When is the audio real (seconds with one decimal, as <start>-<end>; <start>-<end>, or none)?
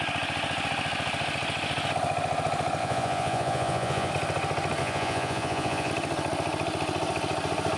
0.0-2.8; 4.1-4.8; 5.9-7.8